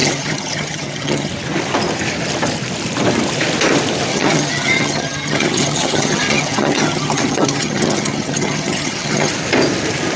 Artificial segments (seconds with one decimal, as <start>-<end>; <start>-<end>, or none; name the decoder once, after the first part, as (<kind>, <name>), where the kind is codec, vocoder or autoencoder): 0.0-1.3 (vocoder, HiFi-GAN); 4.1-9.3